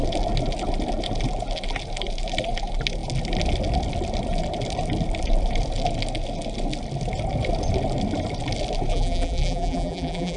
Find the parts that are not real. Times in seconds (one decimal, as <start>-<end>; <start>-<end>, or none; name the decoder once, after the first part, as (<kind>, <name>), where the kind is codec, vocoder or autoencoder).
8.9-10.4 (vocoder, BigVGAN v2)